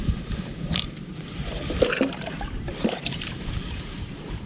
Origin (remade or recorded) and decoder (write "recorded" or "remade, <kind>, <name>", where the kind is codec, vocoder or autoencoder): remade, vocoder, BigVGAN v2